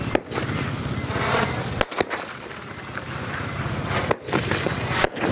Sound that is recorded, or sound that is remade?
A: recorded